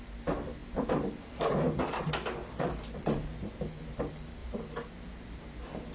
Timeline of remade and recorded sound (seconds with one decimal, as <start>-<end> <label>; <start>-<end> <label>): 0.0-5.9 remade